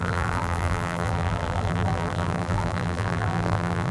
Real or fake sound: fake